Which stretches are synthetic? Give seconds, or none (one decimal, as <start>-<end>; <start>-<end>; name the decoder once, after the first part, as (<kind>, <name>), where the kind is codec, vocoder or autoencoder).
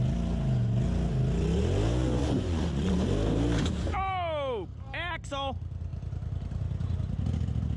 2.2-2.9 (vocoder, Vocos)